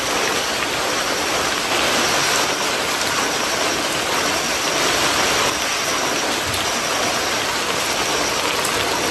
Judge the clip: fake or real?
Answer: real